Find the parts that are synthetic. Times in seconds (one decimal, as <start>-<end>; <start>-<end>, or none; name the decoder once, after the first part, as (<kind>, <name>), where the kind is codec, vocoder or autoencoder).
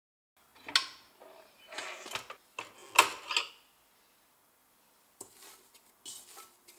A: none